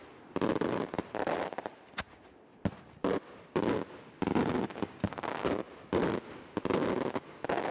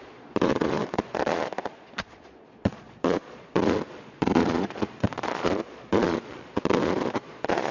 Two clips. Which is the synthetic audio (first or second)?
second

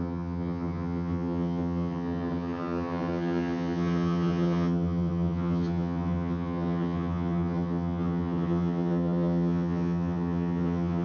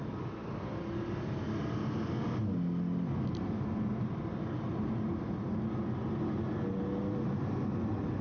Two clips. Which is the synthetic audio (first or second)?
first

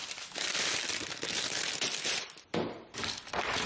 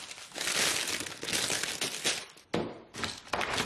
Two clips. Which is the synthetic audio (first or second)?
first